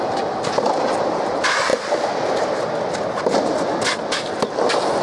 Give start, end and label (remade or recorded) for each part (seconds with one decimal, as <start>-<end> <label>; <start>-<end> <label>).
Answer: 0.0-5.0 recorded